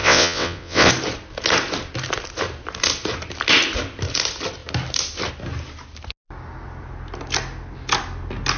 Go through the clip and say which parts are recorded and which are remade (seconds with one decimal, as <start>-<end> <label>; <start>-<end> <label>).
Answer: 0.0-0.9 remade; 0.9-8.6 recorded